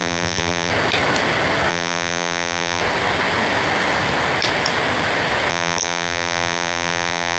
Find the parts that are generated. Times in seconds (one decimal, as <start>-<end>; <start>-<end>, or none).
0.0-0.7; 1.7-2.8; 5.5-7.4